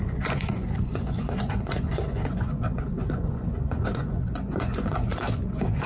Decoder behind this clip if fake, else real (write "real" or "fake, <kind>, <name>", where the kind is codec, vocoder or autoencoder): fake, vocoder, Vocos